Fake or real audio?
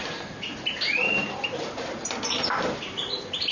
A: fake